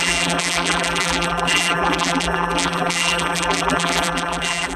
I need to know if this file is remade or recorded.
remade